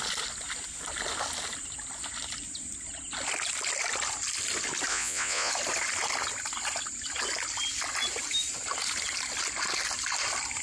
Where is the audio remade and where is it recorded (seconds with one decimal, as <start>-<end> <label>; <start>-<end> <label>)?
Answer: 0.0-4.9 recorded; 4.9-5.5 remade; 5.5-10.6 recorded